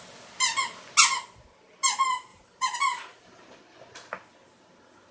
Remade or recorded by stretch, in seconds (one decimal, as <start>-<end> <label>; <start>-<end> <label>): 0.0-2.3 recorded; 2.3-3.6 remade; 3.6-5.1 recorded

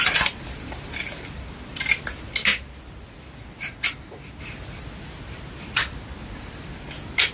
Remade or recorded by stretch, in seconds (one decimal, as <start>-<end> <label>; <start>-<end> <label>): 0.0-7.3 recorded

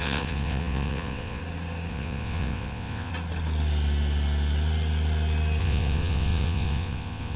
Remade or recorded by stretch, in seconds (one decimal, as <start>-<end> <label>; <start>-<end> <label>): 0.0-1.4 remade; 1.4-1.9 recorded; 1.9-3.1 remade; 3.1-5.6 recorded; 5.6-7.4 remade

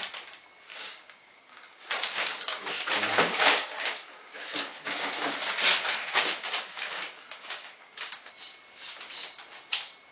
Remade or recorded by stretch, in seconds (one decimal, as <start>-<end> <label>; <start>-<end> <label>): 0.0-0.7 recorded; 0.7-2.7 remade; 2.7-3.3 recorded; 3.3-5.4 remade; 5.4-6.0 recorded; 6.0-8.3 remade; 8.3-10.1 recorded

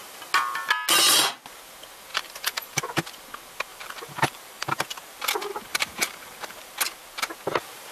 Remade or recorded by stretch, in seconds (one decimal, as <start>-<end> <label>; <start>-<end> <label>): 0.0-2.1 recorded; 2.1-2.8 remade; 2.8-3.7 recorded; 3.7-5.3 remade; 5.3-5.7 recorded; 5.7-6.8 remade; 6.8-7.9 recorded

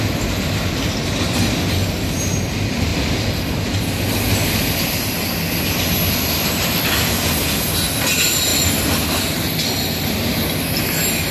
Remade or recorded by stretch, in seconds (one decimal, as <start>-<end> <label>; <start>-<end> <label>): 0.0-2.9 recorded; 2.9-3.8 remade; 3.8-11.3 recorded